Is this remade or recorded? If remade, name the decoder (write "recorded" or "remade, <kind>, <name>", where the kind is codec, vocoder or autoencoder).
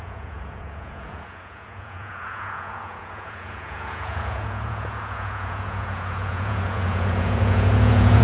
remade, vocoder, Vocos